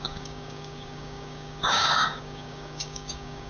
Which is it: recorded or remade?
remade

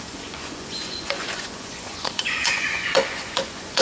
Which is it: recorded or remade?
remade